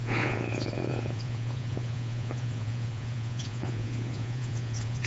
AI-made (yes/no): yes